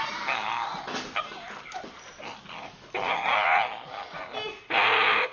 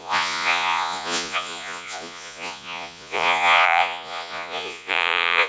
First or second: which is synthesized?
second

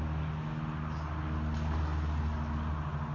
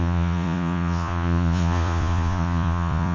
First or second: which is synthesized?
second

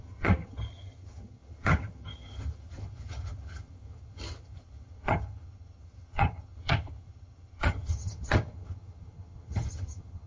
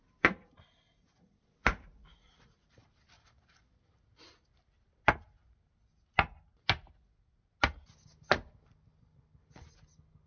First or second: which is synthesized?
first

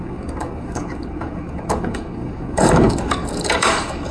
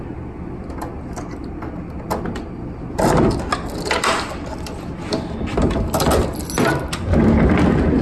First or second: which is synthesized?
first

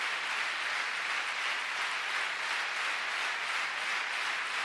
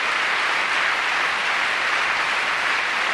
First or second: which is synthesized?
second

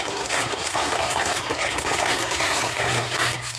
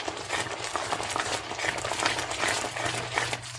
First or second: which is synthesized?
first